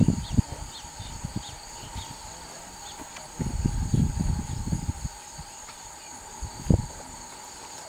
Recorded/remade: recorded